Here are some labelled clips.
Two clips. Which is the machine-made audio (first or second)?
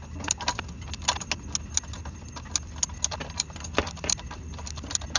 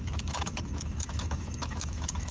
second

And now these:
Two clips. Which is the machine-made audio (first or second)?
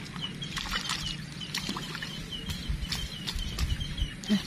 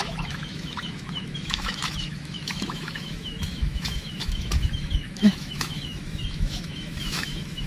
second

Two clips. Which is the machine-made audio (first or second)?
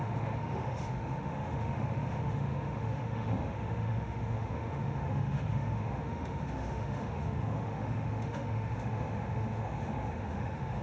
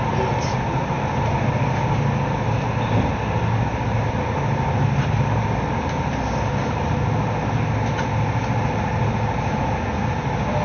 first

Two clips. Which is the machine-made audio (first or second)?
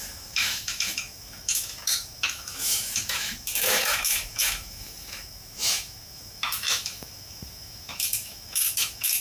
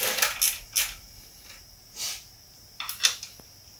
first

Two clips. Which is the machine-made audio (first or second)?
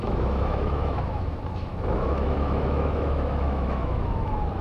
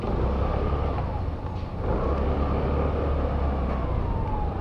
first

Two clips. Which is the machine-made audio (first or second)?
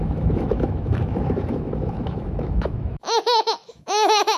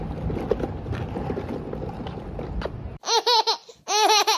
first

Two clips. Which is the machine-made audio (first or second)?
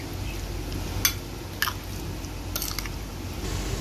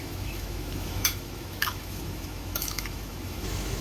second